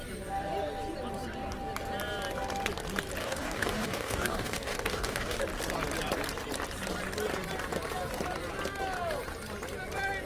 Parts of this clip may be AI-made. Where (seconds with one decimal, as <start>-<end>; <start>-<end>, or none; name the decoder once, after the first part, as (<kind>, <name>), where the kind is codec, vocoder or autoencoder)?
3.2-5.4 (codec, DAC)